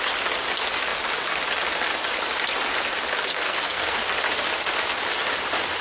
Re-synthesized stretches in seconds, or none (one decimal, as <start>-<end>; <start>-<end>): 3.3-4.0